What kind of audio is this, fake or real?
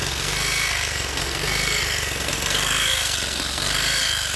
fake